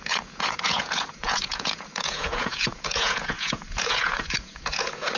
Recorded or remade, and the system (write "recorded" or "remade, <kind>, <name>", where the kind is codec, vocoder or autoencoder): remade, vocoder, Vocos